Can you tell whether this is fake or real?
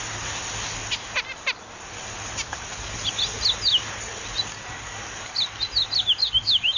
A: real